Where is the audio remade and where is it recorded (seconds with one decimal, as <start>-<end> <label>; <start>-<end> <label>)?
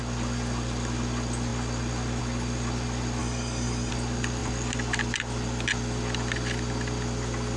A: 0.0-3.2 recorded; 3.2-3.9 remade; 3.9-7.6 recorded